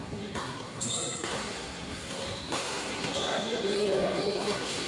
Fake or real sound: fake